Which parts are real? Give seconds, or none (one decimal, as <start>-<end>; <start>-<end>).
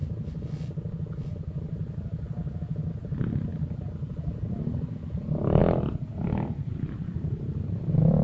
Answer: 0.0-1.3; 3.5-5.6